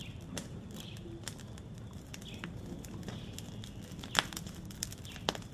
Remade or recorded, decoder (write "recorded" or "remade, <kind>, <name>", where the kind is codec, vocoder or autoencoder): recorded